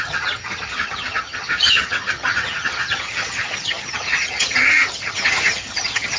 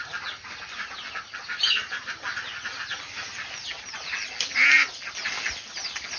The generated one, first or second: first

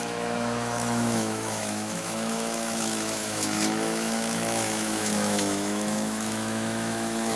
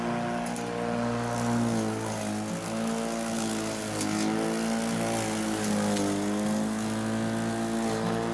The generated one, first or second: first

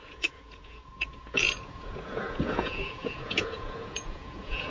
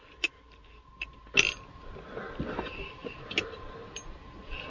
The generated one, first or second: first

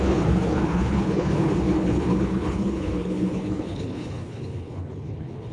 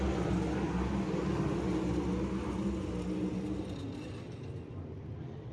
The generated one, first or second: first